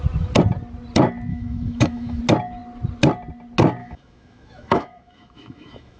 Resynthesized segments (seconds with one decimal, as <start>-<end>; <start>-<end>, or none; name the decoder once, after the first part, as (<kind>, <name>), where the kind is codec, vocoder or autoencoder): 1.3-2.2 (autoencoder, DAC-VAE); 3.8-6.0